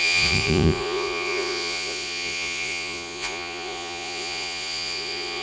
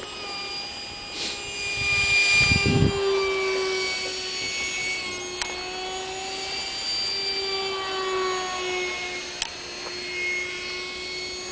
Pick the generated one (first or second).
first